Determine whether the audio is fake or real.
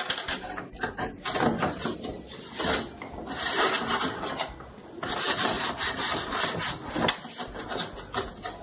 real